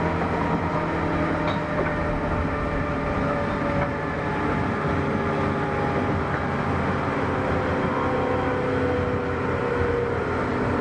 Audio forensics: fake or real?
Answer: real